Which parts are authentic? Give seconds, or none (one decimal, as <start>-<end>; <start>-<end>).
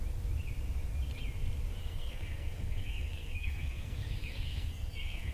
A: 0.0-1.8